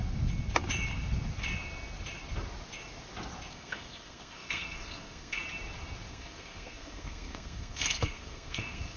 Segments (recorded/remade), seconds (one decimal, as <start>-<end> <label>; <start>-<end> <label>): 0.0-3.5 recorded; 3.5-5.4 remade; 5.4-6.1 recorded; 6.1-9.0 remade